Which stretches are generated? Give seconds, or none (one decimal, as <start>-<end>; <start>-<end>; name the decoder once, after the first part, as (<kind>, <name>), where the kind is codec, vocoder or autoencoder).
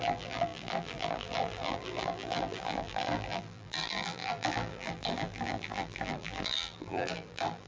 0.0-7.7 (vocoder, BigVGAN v2)